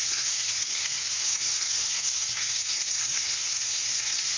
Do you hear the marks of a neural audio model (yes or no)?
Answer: yes